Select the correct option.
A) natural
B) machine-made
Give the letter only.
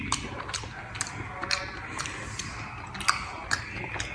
A